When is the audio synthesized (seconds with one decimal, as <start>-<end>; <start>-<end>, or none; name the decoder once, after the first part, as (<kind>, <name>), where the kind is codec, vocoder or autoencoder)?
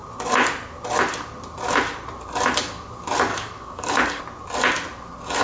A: 3.3-4.2 (codec, DAC)